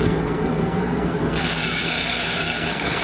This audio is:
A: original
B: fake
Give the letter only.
B